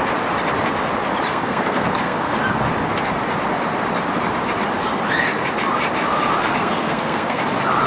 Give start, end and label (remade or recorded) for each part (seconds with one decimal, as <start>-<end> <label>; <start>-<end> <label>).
0.0-1.3 recorded; 1.3-2.3 remade; 2.3-6.6 recorded; 6.6-7.4 remade; 7.4-7.9 recorded